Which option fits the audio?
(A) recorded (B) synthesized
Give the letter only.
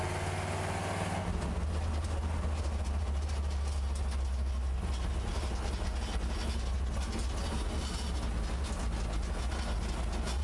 A